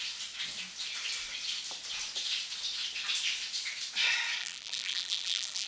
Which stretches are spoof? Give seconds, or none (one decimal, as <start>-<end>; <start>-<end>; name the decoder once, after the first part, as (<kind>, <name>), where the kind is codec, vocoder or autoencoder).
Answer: 4.4-5.7 (vocoder, BigVGAN v2)